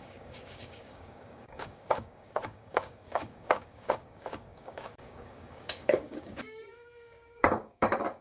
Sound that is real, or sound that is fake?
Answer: fake